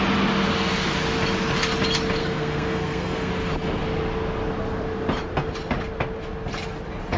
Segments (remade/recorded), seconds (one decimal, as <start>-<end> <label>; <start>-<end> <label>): 0.0-2.2 recorded; 2.2-3.3 remade; 3.3-7.2 recorded